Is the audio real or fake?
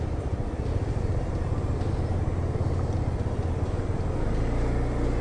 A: real